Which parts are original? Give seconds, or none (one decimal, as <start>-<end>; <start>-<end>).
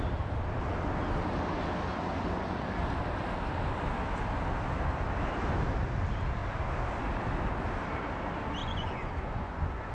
0.0-8.6